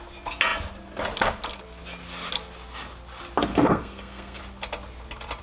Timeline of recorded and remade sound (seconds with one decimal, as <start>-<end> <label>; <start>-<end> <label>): 0.0-3.5 recorded; 3.5-4.4 remade; 4.4-5.4 recorded

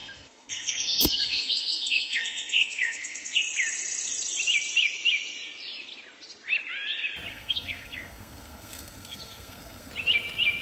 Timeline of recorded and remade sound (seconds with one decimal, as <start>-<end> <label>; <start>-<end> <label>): 0.0-3.4 remade; 3.4-7.3 recorded; 7.3-9.9 remade; 9.9-10.6 recorded

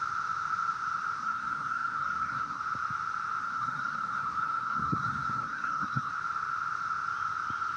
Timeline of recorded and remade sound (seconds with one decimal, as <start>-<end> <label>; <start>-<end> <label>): 0.0-1.2 recorded; 1.2-2.6 remade; 2.6-3.4 recorded; 3.4-6.1 remade; 6.1-7.8 recorded

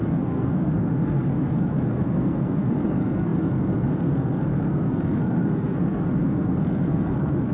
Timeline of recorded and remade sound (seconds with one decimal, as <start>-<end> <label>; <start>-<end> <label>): 0.0-7.5 remade